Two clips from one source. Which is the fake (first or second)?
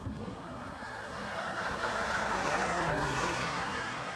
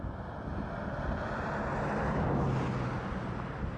first